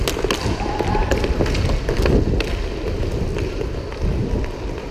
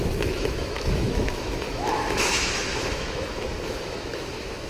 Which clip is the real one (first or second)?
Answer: first